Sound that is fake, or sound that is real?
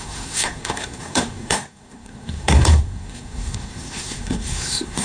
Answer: fake